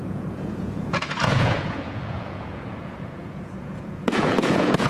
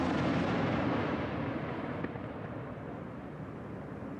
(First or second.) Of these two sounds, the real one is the second